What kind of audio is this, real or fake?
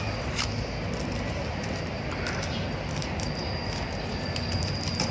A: fake